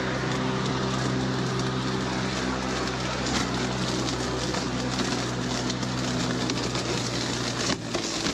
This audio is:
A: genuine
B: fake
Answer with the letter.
A